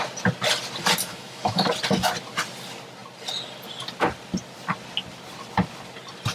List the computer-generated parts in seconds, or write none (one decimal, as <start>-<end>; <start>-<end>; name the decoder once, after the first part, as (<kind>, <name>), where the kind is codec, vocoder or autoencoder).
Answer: 1.1-1.7 (autoencoder, DAC-VAE)